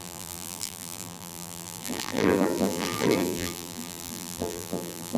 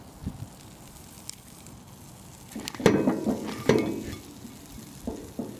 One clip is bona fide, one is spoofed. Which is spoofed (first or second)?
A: first